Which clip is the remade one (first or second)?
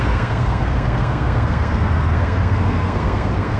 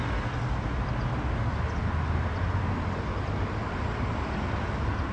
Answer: first